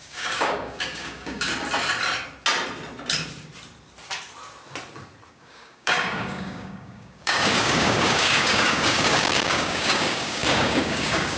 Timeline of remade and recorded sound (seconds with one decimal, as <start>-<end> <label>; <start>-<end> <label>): 0.0-1.5 remade; 1.5-5.3 recorded; 5.3-11.4 remade